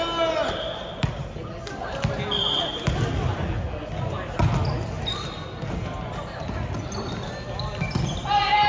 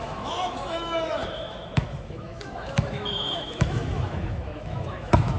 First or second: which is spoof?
second